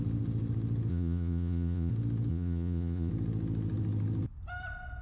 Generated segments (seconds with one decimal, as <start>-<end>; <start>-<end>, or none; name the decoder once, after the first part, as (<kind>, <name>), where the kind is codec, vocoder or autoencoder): 0.9-1.9 (vocoder, Vocos); 2.3-3.1

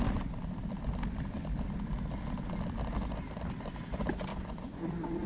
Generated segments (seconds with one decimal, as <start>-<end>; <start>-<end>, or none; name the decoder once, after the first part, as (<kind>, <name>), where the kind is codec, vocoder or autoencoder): 4.3-4.8 (vocoder, Vocos)

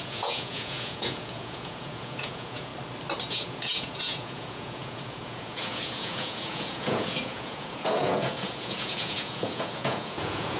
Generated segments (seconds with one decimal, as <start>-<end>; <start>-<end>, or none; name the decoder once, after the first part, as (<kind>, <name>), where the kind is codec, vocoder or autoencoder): 0.0-2.7 (vocoder, Vocos); 3.3-10.6

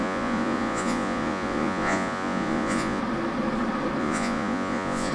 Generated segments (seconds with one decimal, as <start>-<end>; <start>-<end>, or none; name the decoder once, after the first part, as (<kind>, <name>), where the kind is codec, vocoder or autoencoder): 0.0-3.0 (vocoder, Vocos); 4.0-5.1

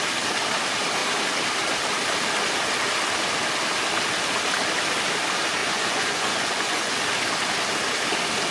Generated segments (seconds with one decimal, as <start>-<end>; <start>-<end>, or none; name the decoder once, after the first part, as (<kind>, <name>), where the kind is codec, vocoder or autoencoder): 5.6-7.0 (vocoder, Vocos)

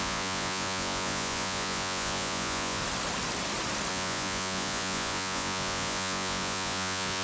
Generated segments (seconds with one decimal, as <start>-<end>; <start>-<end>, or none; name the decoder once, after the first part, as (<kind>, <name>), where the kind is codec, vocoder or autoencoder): 0.0-2.8 (vocoder, Vocos); 3.9-7.2

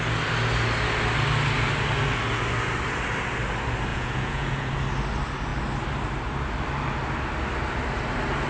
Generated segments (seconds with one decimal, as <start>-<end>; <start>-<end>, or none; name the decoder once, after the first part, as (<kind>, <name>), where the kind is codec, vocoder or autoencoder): 3.9-4.7 (vocoder, Vocos)